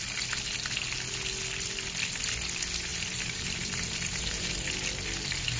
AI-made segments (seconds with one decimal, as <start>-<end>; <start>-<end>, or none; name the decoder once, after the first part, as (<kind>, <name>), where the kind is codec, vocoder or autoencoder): 2.9-4.5 (vocoder, BigVGAN v2)